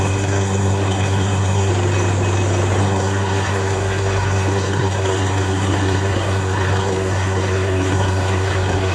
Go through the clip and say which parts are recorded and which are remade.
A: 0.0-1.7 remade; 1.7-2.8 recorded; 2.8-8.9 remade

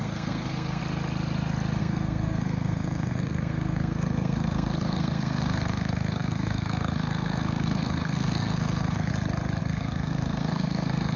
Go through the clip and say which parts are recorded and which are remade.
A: 0.0-0.8 remade; 0.8-1.8 recorded; 1.8-9.1 remade; 9.1-9.6 recorded; 9.6-11.2 remade

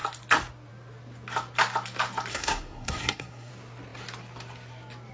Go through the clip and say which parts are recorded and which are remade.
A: 0.0-2.3 recorded; 2.3-3.5 remade; 3.5-5.1 recorded

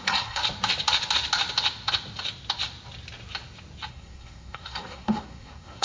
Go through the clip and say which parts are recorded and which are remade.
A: 0.0-0.4 remade; 0.4-3.9 recorded; 3.9-5.8 remade

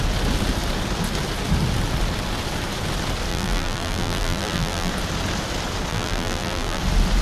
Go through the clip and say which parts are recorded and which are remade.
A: 0.0-3.3 recorded; 3.3-4.9 remade; 4.9-5.9 recorded; 5.9-6.8 remade; 6.8-7.2 recorded

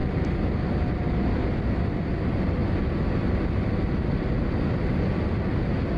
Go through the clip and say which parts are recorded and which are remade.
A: 0.0-6.0 recorded